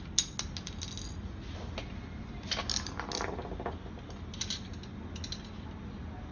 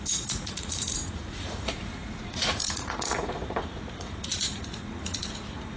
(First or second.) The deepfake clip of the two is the second